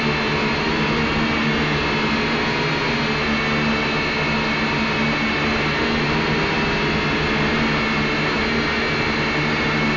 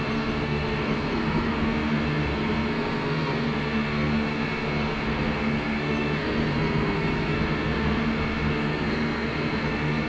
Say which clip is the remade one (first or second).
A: second